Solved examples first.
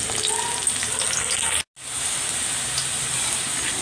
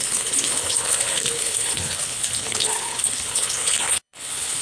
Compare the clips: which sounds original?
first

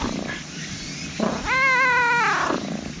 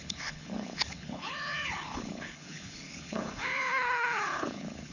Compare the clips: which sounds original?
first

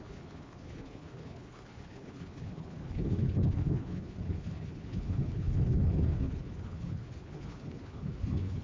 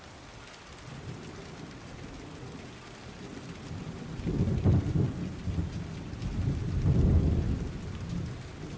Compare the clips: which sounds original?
second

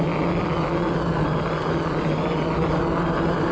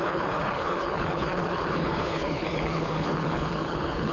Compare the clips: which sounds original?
first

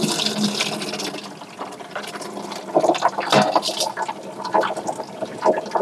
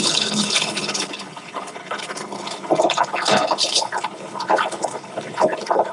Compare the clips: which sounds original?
first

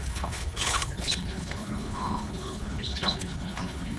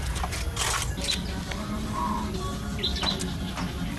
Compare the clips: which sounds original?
second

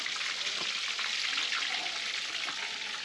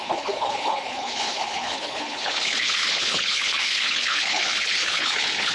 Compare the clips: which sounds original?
first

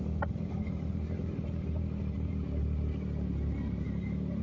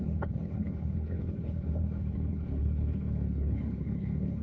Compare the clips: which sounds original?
first